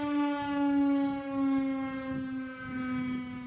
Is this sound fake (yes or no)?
no